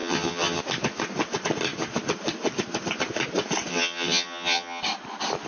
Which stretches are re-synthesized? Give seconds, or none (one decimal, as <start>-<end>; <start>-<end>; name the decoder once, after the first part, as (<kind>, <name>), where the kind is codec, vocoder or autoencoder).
0.0-0.6 (vocoder, HiFi-GAN); 3.7-4.8